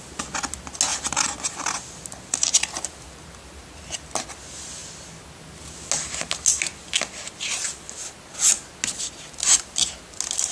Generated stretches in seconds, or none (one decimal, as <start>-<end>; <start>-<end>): none